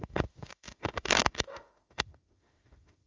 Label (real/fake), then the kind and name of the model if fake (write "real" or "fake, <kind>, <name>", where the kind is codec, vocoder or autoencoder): fake, autoencoder, DAC-VAE